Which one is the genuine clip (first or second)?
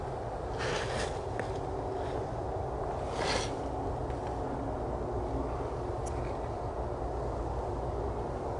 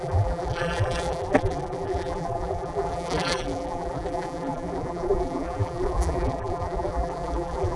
first